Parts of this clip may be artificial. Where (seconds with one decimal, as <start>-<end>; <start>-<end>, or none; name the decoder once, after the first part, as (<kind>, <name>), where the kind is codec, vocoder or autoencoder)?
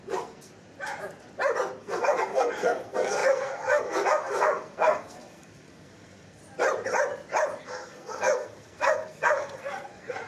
0.0-0.5 (codec, SNAC); 1.8-6.4; 7.6-10.3